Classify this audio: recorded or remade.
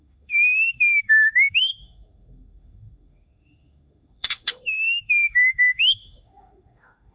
remade